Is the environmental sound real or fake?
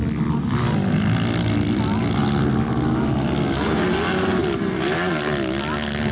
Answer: real